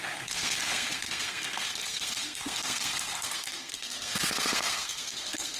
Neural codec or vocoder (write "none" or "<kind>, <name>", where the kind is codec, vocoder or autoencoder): codec, SNAC